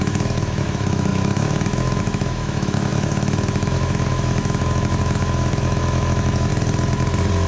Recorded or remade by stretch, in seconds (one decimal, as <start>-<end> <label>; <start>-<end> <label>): 0.0-6.5 remade; 6.5-7.5 recorded